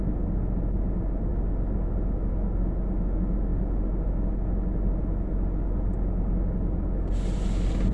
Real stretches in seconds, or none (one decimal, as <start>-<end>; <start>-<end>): 0.0-7.9